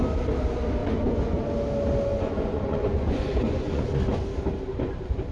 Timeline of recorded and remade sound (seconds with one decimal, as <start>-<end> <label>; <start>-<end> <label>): 0.0-0.8 recorded; 0.8-1.4 remade; 1.4-2.1 recorded; 2.1-3.9 remade; 3.9-5.3 recorded